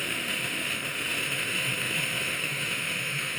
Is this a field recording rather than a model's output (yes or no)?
no